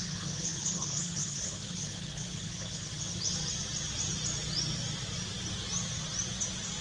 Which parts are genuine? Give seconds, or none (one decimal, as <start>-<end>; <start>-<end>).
2.9-6.8